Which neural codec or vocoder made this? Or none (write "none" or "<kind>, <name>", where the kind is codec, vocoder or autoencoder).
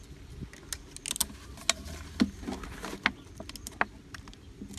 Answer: none